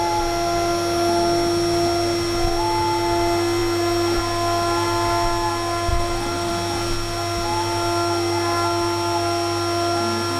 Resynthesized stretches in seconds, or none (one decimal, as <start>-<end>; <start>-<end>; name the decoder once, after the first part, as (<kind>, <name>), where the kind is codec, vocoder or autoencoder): 5.9-6.5 (vocoder, BigVGAN v2)